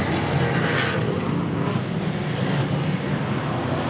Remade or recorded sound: recorded